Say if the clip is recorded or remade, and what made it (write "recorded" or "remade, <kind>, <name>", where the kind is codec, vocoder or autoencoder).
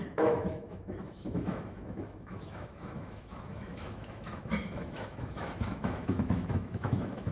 remade, autoencoder, DAC-VAE